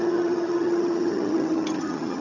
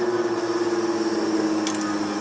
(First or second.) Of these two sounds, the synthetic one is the first